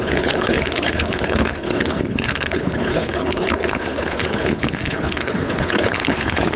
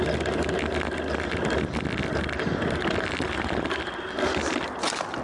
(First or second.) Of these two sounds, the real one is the second